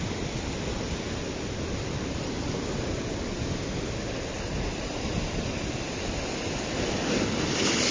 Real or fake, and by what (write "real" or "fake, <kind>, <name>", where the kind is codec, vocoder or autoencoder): real